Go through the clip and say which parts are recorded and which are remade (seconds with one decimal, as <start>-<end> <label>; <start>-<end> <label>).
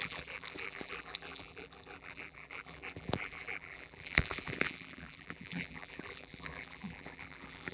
0.0-7.7 remade